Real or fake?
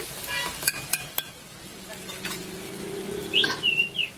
real